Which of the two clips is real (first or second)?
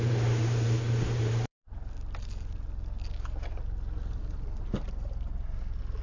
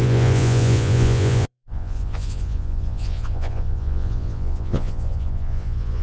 first